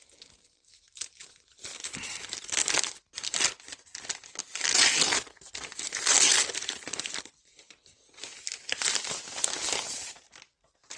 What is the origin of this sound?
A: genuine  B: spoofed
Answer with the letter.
A